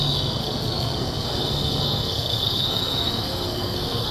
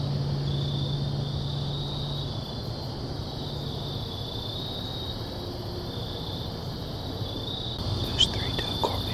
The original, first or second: second